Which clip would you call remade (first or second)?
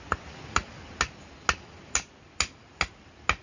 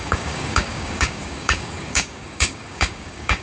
second